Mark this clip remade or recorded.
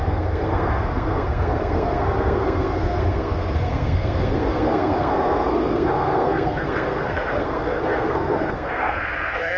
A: remade